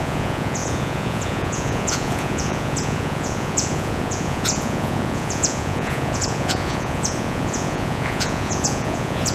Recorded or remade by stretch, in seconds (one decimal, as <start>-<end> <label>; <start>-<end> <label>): 0.0-9.3 remade